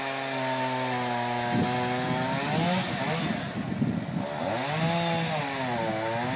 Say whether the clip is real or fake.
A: real